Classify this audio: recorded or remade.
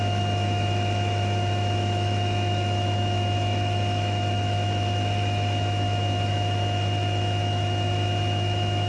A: remade